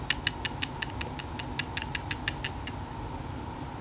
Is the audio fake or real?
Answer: real